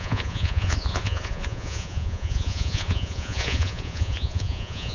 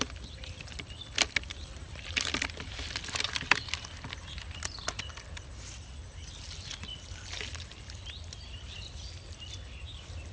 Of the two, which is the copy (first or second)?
first